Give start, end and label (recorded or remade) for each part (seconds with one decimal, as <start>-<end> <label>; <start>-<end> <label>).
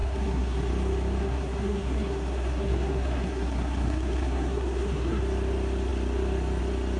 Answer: 0.0-0.7 remade; 0.7-1.2 recorded; 1.2-5.2 remade; 5.2-7.0 recorded